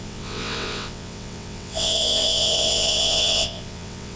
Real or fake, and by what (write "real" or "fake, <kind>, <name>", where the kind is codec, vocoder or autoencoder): fake, vocoder, WaveNeXt